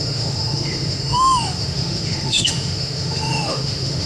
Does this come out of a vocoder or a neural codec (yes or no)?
yes